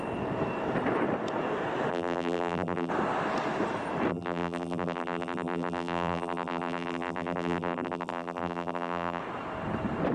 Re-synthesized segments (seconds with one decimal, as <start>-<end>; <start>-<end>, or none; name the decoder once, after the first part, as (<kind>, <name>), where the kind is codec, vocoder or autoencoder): 1.9-2.9 (vocoder, BigVGAN v2); 4.1-9.2